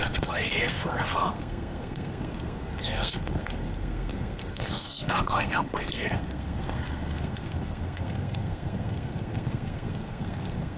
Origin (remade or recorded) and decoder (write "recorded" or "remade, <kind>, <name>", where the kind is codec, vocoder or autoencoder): remade, codec, SNAC